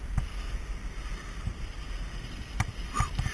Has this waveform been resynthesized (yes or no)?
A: no